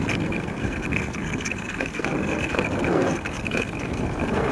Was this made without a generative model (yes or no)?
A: no